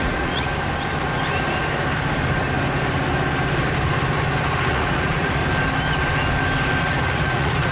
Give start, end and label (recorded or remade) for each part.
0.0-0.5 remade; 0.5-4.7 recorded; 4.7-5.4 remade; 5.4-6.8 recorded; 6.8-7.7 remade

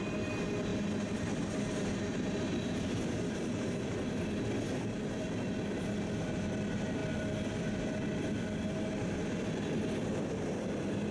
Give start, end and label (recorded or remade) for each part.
0.0-11.1 recorded

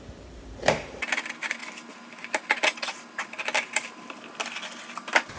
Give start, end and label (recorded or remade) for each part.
0.0-5.4 recorded

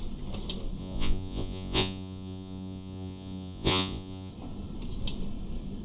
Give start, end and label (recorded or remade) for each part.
0.0-0.8 recorded; 0.8-4.3 remade; 4.3-5.8 recorded